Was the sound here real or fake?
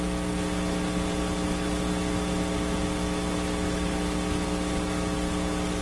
real